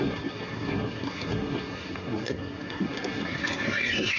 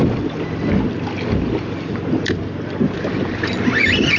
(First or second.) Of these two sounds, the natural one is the second